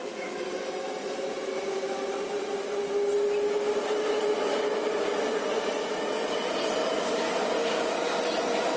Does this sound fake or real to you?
real